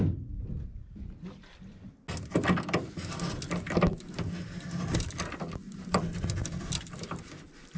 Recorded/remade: recorded